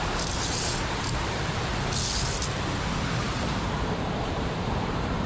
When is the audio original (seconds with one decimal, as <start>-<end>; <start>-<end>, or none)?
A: 1.7-3.2